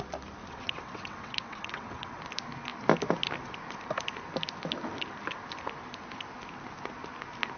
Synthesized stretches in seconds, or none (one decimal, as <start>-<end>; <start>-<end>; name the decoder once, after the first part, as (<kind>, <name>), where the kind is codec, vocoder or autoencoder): 0.4-2.2 (vocoder, WaveNeXt)